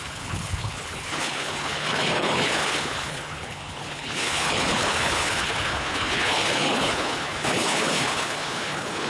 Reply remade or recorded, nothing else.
remade